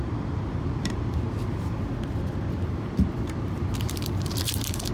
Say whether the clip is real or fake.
fake